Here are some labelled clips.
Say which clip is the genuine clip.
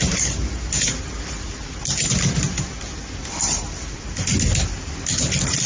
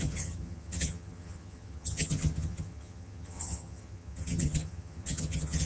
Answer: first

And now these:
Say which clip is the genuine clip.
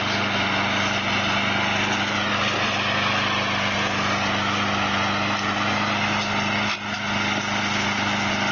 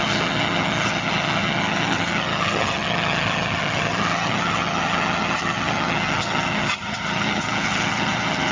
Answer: first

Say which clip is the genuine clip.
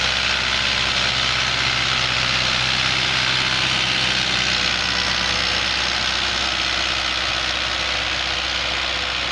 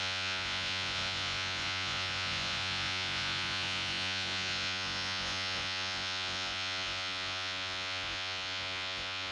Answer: first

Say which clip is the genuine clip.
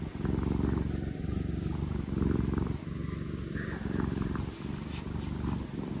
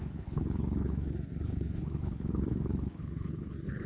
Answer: first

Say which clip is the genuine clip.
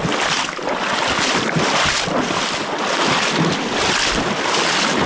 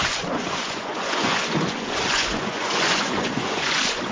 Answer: first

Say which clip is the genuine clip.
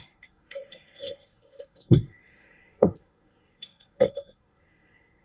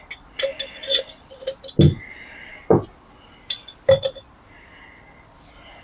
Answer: second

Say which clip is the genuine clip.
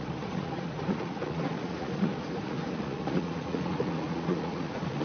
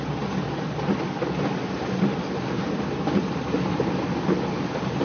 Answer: second